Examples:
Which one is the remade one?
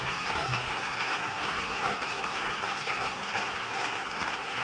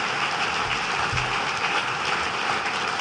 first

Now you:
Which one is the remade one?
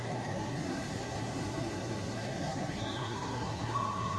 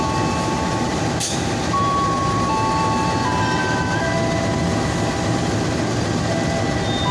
first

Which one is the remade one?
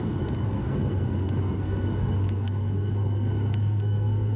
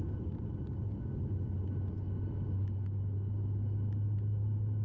first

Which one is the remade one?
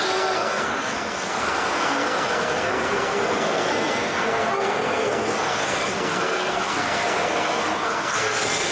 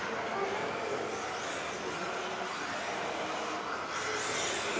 first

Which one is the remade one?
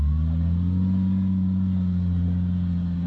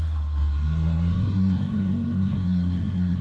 second